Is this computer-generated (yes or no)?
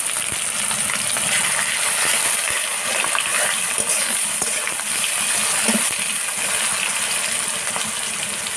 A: no